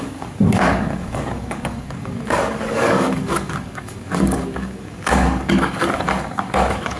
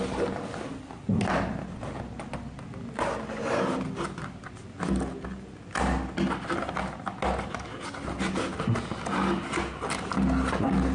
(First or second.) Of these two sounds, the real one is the second